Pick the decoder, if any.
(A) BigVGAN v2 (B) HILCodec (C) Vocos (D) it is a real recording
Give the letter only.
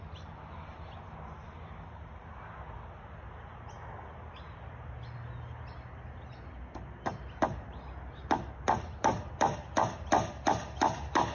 D